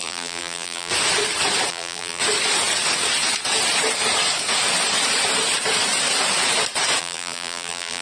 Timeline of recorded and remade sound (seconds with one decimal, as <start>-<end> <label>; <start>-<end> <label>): 0.0-0.9 remade; 0.9-1.7 recorded; 1.7-2.2 remade; 2.2-7.0 recorded; 7.0-8.0 remade